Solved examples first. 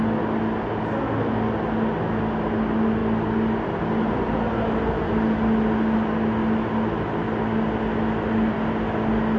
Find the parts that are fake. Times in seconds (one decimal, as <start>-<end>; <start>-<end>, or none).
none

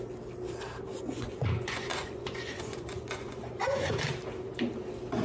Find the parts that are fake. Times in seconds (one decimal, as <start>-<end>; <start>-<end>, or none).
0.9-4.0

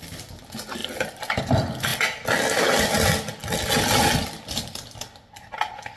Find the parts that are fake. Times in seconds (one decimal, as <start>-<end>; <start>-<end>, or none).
none

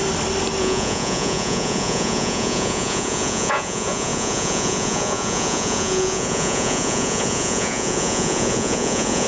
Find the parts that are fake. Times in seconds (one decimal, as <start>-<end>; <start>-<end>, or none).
0.6-9.3

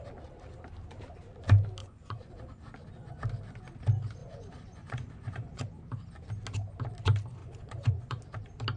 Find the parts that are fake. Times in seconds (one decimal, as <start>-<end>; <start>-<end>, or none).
1.8-2.3; 4.2-5.6; 7.4-8.2

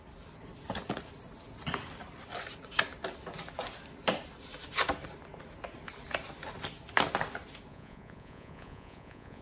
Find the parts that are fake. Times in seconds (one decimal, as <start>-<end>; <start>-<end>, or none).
7.7-9.4

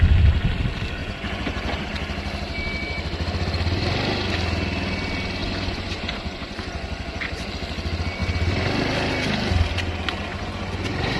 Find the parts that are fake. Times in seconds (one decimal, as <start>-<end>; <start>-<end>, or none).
1.0-1.8; 5.4-7.5; 10.3-11.2